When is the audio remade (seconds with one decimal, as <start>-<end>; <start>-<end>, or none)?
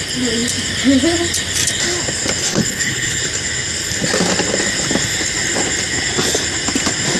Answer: 2.4-3.2